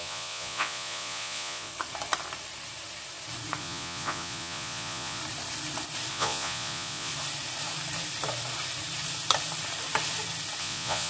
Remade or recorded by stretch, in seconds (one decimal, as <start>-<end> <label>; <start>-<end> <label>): 0.0-1.7 remade; 1.7-3.6 recorded; 3.6-5.2 remade; 5.2-6.1 recorded; 6.1-7.1 remade; 7.1-10.6 recorded; 10.6-11.1 remade